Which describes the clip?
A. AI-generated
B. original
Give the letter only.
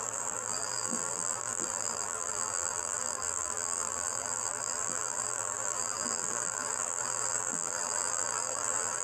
A